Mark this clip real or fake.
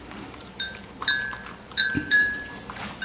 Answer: fake